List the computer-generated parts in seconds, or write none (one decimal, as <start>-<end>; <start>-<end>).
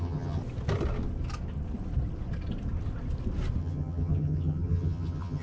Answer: 0.0-0.4; 3.6-5.4